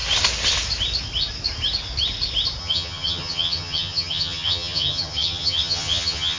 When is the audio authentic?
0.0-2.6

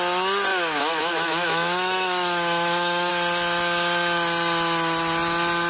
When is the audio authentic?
0.0-0.5; 3.1-5.7

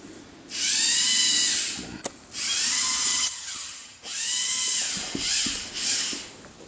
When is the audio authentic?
0.0-3.1; 4.0-6.7

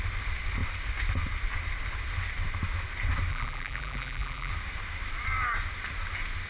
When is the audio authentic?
0.0-3.3; 4.5-6.5

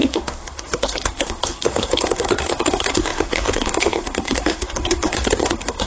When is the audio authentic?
none

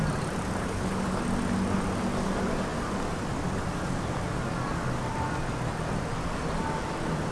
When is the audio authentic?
0.0-0.6; 1.2-7.3

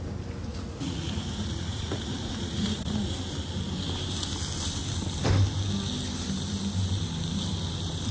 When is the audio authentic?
0.0-0.5; 3.1-8.1